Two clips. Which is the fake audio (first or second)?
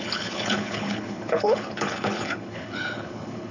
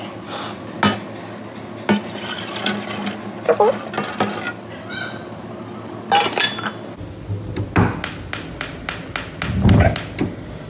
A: first